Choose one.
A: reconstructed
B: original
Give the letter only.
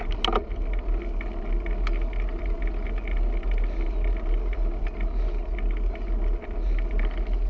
B